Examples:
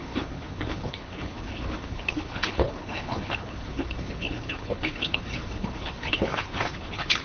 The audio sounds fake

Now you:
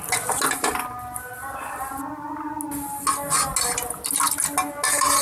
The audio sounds real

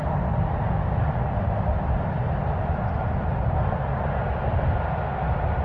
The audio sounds real